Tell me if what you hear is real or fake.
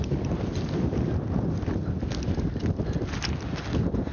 real